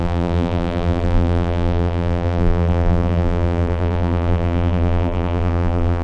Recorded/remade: remade